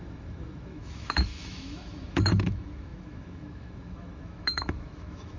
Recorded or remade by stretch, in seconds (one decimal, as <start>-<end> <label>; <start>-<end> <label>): 0.0-5.4 remade